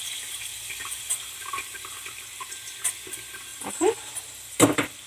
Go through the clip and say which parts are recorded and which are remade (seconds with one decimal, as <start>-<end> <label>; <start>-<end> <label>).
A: 0.0-3.5 recorded; 3.5-4.1 remade; 4.1-5.1 recorded